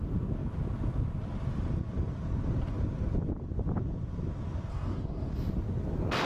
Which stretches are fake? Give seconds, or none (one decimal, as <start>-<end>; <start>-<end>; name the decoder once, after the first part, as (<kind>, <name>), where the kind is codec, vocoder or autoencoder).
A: 4.7-5.3 (codec, DAC)